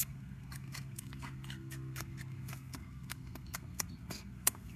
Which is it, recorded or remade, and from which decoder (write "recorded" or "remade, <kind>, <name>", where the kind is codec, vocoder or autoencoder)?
remade, codec, SNAC